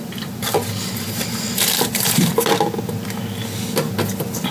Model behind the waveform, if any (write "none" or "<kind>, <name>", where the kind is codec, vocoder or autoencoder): none